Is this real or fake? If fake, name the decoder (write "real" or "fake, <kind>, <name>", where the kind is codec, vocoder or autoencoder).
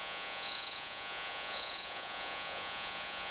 fake, vocoder, Vocos